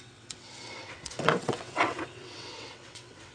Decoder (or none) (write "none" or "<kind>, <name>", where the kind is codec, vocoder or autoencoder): vocoder, WaveNeXt